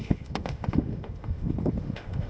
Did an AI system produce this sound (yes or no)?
yes